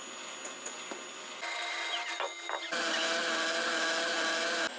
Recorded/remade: recorded